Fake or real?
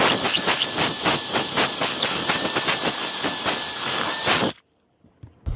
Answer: real